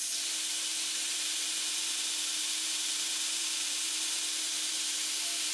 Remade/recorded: remade